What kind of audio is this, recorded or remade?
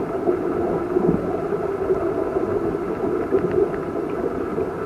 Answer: recorded